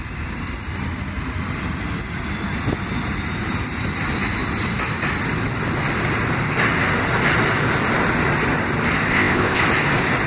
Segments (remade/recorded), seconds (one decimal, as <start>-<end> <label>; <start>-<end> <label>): 0.0-9.1 recorded; 9.1-9.6 remade; 9.6-10.3 recorded